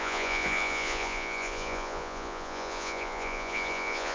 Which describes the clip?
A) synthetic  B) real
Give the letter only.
A